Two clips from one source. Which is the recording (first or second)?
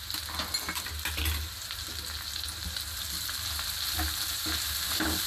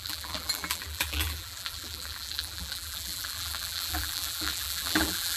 first